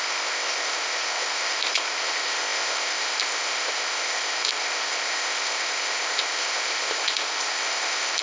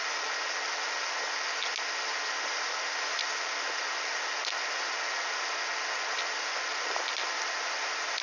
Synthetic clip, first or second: first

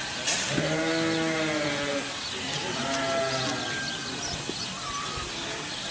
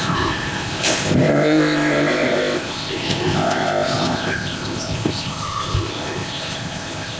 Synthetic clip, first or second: second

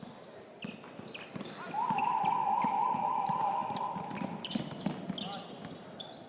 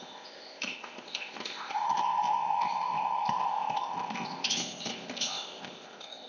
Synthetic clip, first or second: second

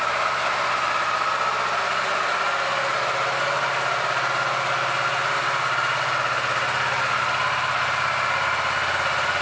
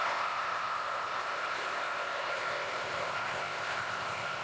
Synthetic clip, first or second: second